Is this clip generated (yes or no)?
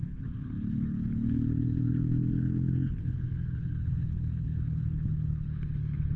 yes